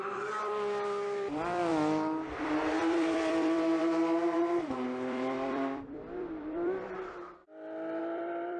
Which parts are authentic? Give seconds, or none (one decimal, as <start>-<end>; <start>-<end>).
1.7-2.3; 7.4-8.0